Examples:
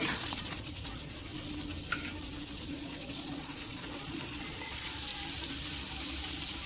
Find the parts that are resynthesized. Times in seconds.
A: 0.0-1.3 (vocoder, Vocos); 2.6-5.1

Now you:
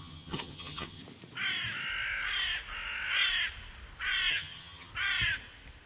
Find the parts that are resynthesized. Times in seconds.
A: 0.0-1.0 (vocoder, HiFi-GAN); 4.3-4.9

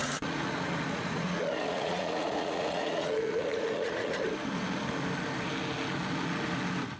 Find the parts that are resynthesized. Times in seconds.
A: 0.0-4.2 (vocoder, Vocos)

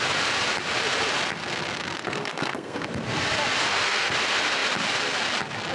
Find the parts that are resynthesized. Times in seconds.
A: 2.0-3.0 (codec, SNAC); 3.6-4.1